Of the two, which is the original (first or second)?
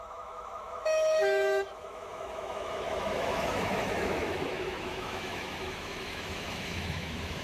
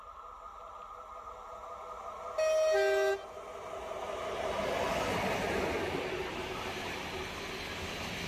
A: second